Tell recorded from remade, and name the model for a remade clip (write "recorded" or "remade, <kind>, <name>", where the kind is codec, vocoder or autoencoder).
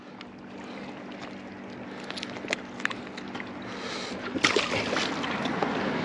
recorded